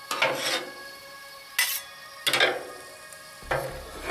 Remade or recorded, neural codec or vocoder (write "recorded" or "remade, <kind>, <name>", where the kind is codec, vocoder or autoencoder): recorded